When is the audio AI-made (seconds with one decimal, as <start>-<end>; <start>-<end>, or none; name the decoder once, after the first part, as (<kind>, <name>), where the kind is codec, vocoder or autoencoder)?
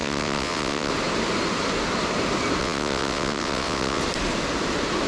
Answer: 0.0-0.9 (vocoder, WaveNeXt); 2.6-4.0